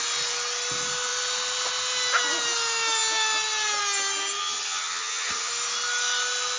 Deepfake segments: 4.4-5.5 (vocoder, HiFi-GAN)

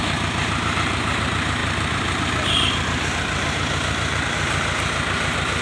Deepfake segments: 0.0-5.6 (vocoder, BigVGAN v2)

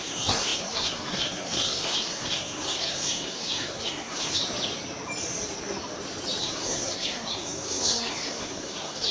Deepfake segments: 0.0-4.4 (codec, SNAC); 6.4-9.1

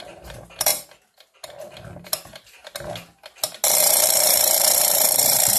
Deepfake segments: 0.0-0.7 (vocoder, BigVGAN v2); 1.6-2.6; 3.8-5.6

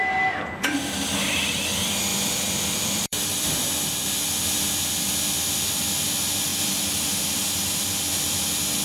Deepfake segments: 2.1-3.4 (vocoder, BigVGAN v2); 6.5-7.2

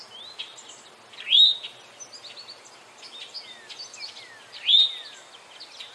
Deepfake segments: none